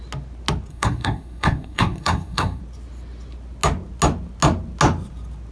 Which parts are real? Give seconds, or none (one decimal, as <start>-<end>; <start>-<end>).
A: 0.0-0.7; 2.6-5.5

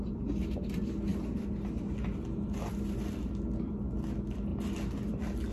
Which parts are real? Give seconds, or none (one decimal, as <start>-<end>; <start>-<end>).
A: 0.0-5.5